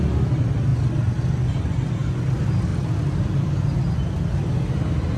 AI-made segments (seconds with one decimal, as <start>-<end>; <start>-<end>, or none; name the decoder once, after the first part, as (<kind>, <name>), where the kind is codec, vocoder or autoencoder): none